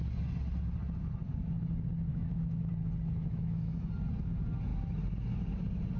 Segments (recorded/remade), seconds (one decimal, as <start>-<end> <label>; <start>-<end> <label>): 0.0-2.1 recorded; 2.1-2.7 remade; 2.7-3.2 recorded; 3.2-3.9 remade; 3.9-6.0 recorded